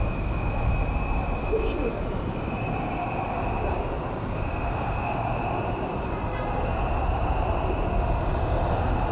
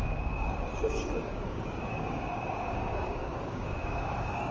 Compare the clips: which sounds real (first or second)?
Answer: first